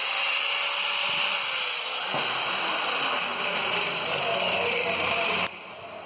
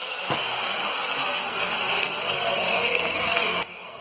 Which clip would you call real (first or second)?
first